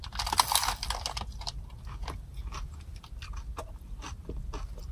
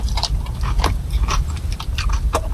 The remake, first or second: second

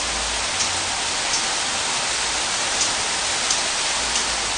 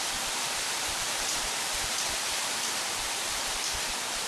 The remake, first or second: second